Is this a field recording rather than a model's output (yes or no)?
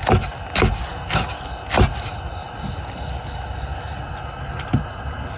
yes